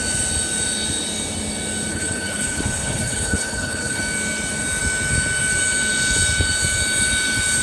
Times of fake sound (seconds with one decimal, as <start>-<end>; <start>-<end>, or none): 1.9-4.0